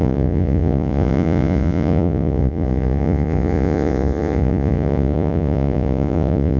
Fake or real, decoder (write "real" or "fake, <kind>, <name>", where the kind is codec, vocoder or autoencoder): fake, vocoder, Vocos